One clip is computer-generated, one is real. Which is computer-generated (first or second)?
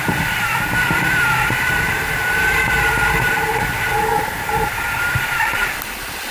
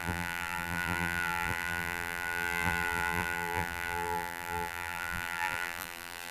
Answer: second